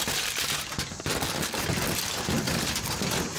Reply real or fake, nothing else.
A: real